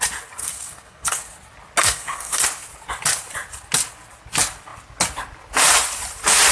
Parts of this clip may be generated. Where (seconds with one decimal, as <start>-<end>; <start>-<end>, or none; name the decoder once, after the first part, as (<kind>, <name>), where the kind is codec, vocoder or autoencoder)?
0.4-1.2 (codec, SNAC); 1.8-2.4

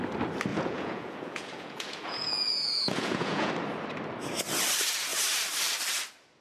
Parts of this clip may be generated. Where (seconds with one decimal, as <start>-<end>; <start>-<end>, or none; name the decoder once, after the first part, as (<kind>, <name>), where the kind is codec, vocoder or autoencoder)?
0.5-3.5 (vocoder, Vocos)